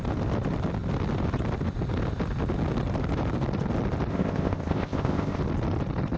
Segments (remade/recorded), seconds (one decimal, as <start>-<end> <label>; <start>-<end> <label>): 0.0-4.1 recorded; 4.1-5.4 remade; 5.4-6.2 recorded